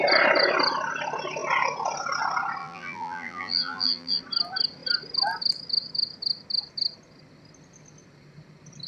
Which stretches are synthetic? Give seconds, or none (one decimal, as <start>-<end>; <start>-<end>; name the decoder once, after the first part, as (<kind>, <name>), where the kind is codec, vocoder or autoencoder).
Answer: 2.6-4.2 (vocoder, BigVGAN v2)